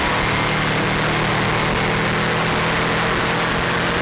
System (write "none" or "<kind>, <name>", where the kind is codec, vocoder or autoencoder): none